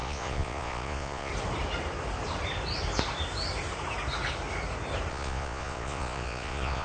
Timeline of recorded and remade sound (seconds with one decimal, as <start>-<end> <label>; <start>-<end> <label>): 0.0-1.3 remade; 1.3-5.1 recorded; 5.1-6.8 remade